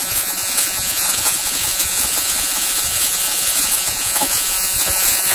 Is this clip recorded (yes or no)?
no